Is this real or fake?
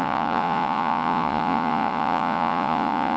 fake